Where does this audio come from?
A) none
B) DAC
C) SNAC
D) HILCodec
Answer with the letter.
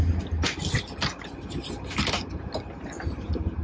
A